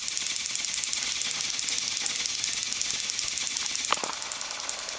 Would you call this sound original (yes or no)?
yes